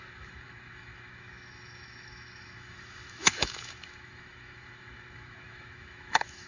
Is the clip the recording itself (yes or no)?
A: no